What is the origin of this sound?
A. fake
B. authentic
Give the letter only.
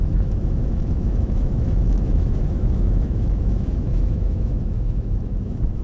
A